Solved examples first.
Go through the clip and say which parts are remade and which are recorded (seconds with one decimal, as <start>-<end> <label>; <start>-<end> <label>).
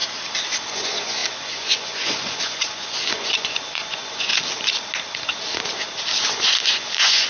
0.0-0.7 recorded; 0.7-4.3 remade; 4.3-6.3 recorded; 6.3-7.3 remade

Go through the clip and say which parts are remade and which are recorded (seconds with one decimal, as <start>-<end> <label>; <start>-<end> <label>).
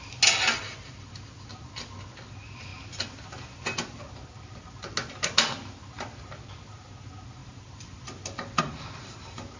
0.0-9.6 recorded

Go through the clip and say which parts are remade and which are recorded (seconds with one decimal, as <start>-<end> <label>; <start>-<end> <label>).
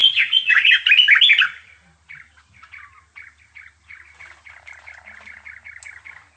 0.0-0.7 remade; 0.7-6.4 recorded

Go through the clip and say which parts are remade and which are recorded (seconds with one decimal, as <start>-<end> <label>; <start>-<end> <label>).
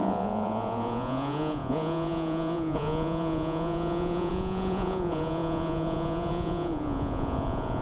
0.0-7.8 remade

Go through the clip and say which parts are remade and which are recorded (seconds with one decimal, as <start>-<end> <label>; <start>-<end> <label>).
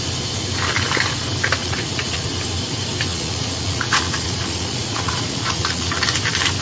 0.0-1.6 recorded; 1.6-2.3 remade; 2.3-3.1 recorded; 3.1-6.0 remade; 6.0-6.6 recorded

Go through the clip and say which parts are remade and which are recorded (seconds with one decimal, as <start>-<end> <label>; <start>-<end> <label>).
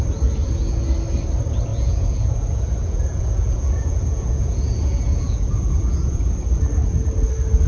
0.0-0.4 recorded; 0.4-0.9 remade; 0.9-1.7 recorded; 1.7-6.3 remade; 6.3-7.7 recorded